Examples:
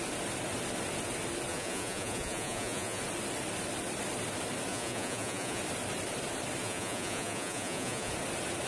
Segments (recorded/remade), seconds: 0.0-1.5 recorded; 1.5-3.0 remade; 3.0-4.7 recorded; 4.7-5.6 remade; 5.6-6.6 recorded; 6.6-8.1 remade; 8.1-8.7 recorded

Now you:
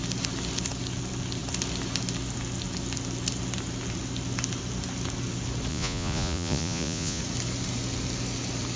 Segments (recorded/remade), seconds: 0.0-5.7 recorded; 5.7-7.2 remade; 7.2-8.8 recorded

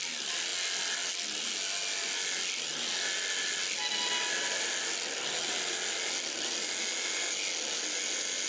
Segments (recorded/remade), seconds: 0.0-8.5 recorded

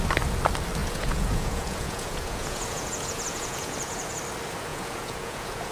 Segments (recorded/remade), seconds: 0.0-0.8 recorded; 0.8-4.2 remade; 4.2-4.7 recorded; 4.7-5.7 remade

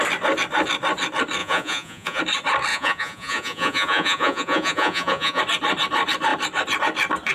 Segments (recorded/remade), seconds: 0.0-1.4 recorded; 1.4-2.2 remade; 2.2-2.7 recorded; 2.7-5.4 remade; 5.4-7.3 recorded

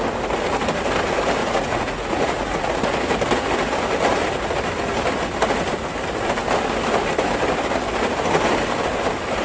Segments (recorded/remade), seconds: 0.0-1.4 recorded; 1.4-2.7 remade; 2.7-9.4 recorded